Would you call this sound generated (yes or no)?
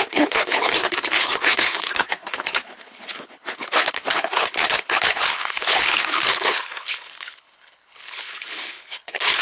yes